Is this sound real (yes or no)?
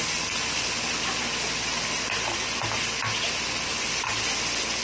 yes